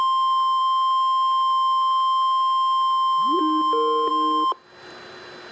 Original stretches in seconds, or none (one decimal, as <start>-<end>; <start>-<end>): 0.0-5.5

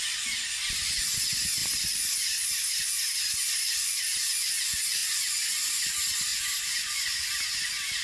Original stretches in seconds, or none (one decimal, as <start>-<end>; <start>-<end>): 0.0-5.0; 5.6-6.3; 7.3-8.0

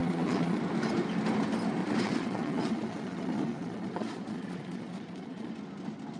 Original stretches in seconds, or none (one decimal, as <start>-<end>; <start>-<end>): 0.6-1.8; 5.5-6.2

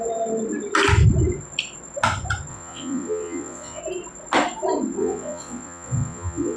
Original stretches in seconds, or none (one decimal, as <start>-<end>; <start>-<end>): 0.0-2.5; 3.8-5.0

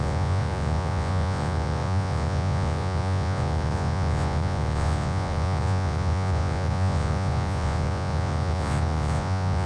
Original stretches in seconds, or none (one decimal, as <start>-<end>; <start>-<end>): none

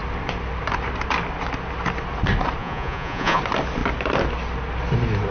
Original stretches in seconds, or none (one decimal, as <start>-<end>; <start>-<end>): 0.0-2.6; 3.4-5.3

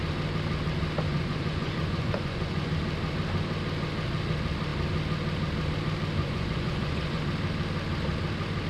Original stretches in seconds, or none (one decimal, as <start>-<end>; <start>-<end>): 0.0-1.1; 2.7-6.2; 7.2-8.7

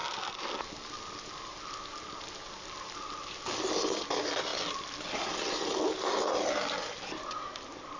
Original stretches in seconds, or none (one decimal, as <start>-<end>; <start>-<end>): 0.0-8.0